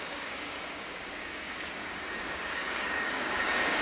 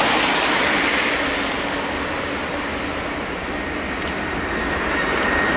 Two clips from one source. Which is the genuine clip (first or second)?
second